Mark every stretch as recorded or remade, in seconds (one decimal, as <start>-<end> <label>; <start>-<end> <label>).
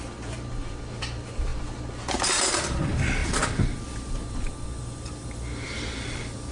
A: 0.0-1.5 remade; 1.5-2.8 recorded; 2.8-6.5 remade